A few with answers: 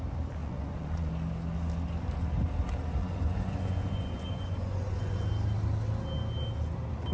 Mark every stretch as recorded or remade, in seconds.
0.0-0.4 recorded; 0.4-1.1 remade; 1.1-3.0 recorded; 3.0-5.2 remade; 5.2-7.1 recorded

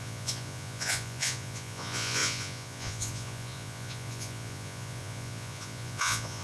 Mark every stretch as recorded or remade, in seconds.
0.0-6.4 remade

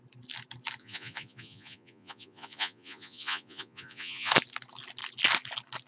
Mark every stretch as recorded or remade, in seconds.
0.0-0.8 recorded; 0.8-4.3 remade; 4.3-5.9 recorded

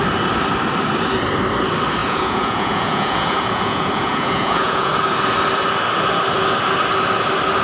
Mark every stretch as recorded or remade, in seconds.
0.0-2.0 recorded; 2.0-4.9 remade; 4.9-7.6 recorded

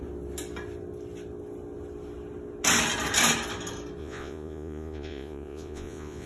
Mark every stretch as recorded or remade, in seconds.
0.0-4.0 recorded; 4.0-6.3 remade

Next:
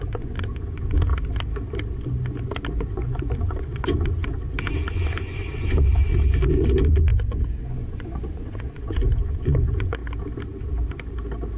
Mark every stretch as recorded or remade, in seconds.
0.0-1.1 remade; 1.1-2.7 recorded; 2.7-4.2 remade; 4.2-4.9 recorded; 4.9-7.1 remade; 7.1-7.6 recorded; 7.6-10.0 remade; 10.0-11.6 recorded